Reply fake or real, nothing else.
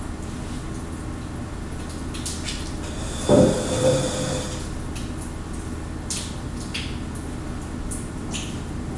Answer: real